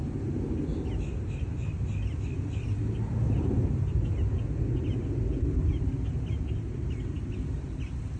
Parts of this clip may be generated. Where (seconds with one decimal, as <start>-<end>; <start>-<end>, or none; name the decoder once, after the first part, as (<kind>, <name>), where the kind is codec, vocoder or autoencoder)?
none

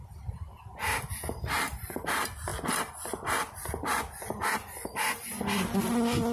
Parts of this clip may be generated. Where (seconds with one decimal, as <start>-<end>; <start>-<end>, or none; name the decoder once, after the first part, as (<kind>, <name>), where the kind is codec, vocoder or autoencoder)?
none

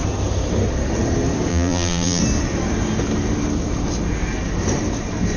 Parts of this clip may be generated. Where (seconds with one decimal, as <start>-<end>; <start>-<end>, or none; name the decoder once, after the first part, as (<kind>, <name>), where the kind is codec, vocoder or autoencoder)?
1.5-2.2 (vocoder, BigVGAN v2)

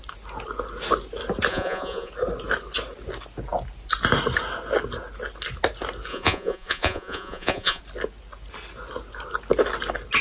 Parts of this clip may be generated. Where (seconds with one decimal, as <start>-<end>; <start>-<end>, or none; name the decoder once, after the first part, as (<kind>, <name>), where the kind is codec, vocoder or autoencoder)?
1.5-2.1 (vocoder, Vocos); 6.1-7.8

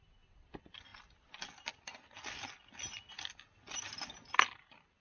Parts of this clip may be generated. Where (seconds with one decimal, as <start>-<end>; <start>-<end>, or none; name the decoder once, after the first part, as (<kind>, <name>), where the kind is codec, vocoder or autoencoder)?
none

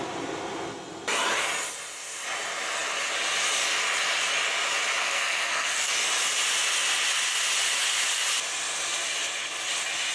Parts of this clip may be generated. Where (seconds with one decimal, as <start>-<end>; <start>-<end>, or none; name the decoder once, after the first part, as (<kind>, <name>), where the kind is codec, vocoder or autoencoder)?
5.0-5.9 (codec, SNAC)

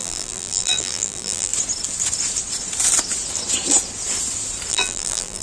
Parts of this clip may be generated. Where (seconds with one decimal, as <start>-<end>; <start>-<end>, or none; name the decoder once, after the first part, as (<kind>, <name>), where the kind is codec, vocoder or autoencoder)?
0.0-1.5 (vocoder, BigVGAN v2); 4.7-5.4

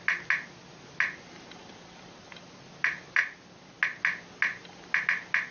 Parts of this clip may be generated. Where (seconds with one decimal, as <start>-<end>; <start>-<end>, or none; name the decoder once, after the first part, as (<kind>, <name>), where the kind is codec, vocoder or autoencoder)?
none